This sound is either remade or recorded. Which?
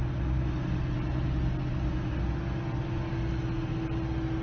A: recorded